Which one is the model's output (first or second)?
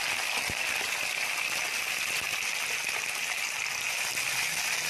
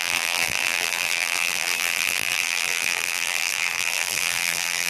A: second